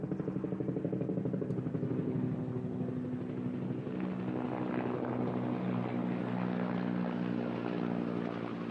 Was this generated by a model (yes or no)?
no